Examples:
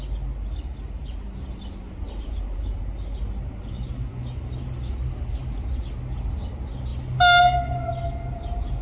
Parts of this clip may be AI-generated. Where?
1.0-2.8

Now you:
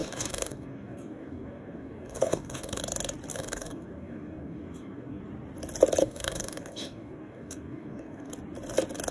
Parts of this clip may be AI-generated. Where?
0.0-2.8; 3.3-5.2; 6.0-8.3